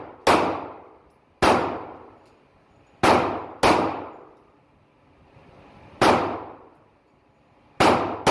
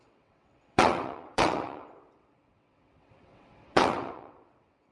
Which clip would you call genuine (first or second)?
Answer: first